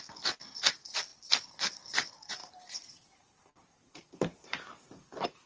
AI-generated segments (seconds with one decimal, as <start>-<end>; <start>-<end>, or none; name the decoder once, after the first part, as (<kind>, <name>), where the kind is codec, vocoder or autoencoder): 2.4-5.5 (vocoder, BigVGAN v2)